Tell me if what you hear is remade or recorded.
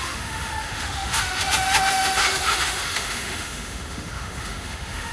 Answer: remade